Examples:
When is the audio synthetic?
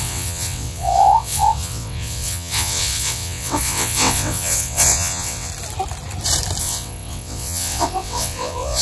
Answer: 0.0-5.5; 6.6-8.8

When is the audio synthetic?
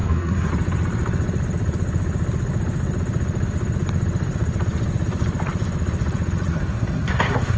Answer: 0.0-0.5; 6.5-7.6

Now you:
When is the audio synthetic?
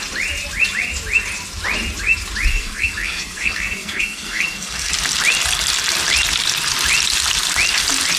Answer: 2.5-4.9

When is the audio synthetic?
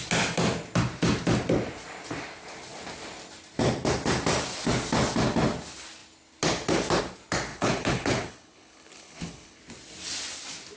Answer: 7.5-9.6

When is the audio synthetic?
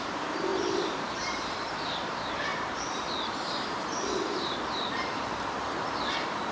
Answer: 0.0-6.5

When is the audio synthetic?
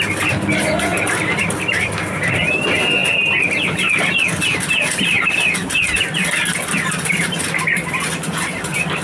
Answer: 0.9-2.1; 3.0-7.4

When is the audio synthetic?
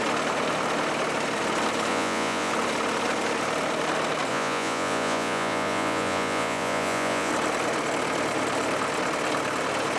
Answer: 1.9-2.5; 4.3-7.3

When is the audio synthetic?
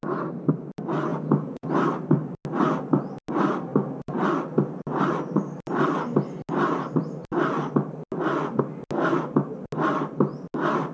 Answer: 1.1-1.7